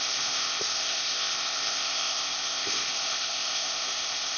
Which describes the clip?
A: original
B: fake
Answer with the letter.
B